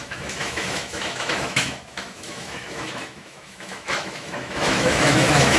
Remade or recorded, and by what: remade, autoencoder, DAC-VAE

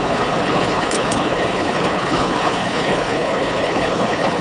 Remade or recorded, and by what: remade, codec, HILCodec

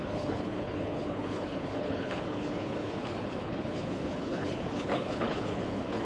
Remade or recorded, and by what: remade, codec, HILCodec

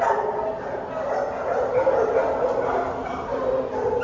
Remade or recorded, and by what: recorded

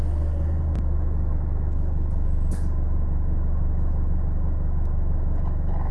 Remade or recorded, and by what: recorded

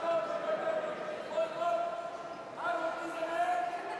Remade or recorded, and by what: recorded